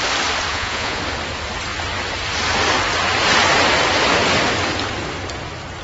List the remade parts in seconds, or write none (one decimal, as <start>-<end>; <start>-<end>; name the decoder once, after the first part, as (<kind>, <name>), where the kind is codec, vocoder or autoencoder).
0.5-1.0 (vocoder, Vocos)